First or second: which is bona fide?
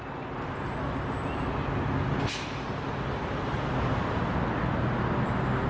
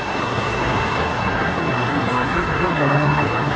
first